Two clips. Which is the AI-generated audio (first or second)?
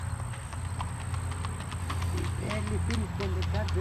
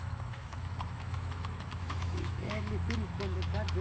second